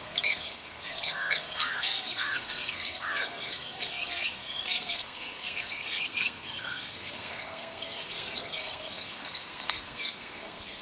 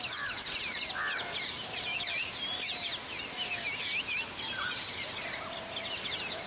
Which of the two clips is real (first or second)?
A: second